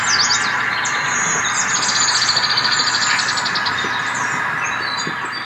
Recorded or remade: recorded